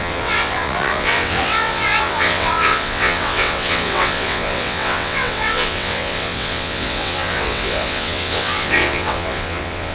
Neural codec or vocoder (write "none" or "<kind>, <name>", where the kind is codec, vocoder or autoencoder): vocoder, WaveNeXt